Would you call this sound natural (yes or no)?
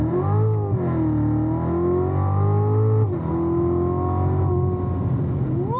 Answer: yes